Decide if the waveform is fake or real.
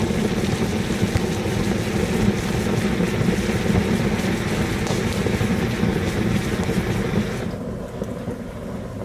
real